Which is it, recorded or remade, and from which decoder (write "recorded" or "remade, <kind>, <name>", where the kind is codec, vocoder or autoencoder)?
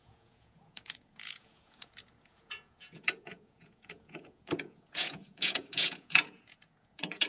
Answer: remade, vocoder, Vocos